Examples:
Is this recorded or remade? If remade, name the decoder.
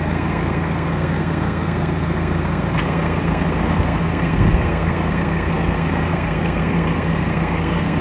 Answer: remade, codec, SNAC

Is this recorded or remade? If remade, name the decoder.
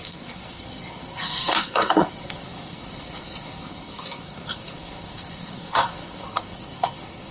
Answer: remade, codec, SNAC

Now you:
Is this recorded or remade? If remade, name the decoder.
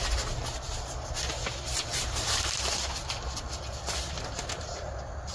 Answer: recorded